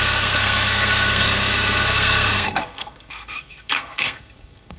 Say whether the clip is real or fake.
fake